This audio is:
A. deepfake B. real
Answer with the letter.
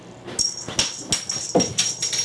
B